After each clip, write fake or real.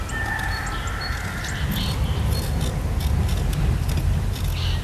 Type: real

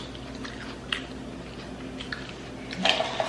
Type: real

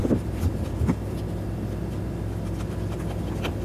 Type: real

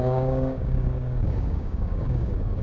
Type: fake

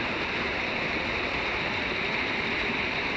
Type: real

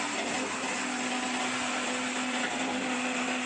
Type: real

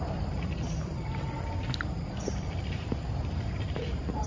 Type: real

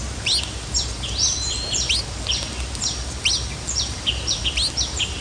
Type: real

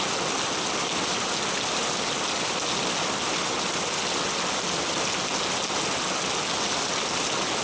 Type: real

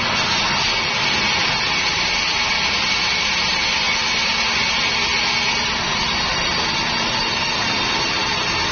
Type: real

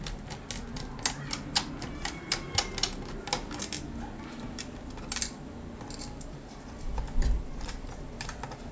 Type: real